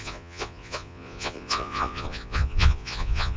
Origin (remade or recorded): remade